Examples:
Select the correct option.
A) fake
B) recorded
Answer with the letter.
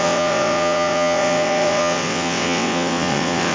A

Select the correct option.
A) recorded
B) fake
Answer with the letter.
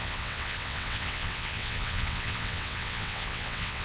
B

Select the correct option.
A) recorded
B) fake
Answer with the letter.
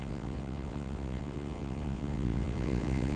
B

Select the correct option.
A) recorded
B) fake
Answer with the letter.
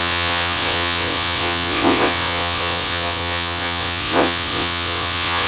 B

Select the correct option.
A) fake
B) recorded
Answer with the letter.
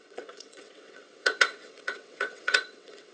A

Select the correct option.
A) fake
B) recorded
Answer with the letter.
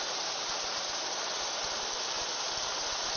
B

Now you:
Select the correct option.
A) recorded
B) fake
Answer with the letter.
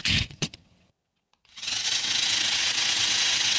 B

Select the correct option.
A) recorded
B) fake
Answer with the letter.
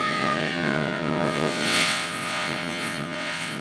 B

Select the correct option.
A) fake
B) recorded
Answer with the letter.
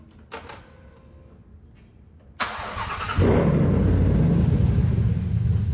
B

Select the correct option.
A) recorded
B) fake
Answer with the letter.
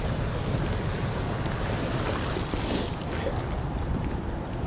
A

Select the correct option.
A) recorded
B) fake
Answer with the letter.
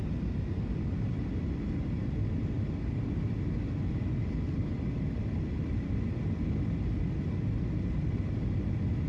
A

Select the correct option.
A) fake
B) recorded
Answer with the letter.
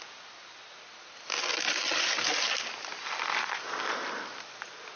B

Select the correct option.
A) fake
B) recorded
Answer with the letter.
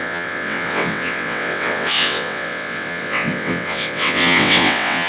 A